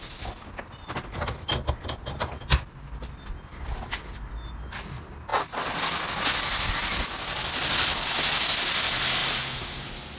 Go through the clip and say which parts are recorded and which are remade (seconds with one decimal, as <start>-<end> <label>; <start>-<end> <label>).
0.0-9.2 recorded; 9.2-10.2 remade